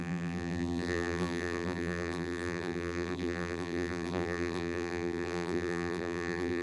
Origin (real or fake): fake